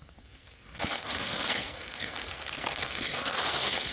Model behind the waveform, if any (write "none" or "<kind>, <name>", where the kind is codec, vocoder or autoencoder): codec, SNAC